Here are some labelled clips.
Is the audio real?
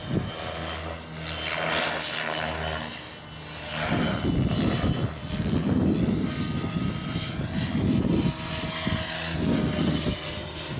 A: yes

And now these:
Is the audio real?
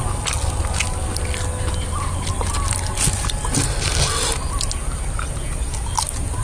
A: yes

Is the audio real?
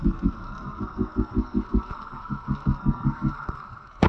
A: no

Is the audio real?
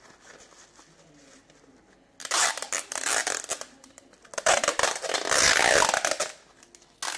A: yes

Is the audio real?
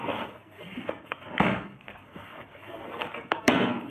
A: no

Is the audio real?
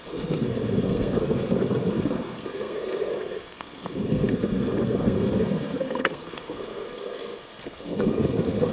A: no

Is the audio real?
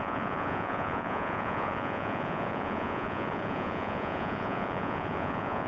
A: no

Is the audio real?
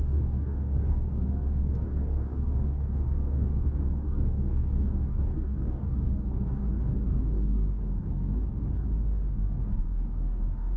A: no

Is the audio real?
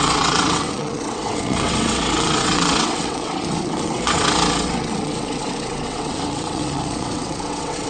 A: no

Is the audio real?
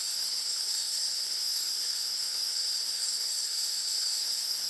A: no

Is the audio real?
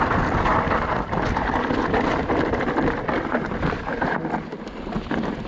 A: yes